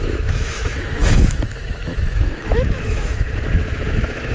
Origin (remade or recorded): remade